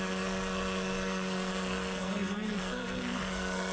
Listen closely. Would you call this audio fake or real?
fake